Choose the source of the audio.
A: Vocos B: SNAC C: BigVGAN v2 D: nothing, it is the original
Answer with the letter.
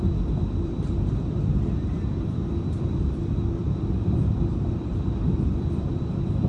C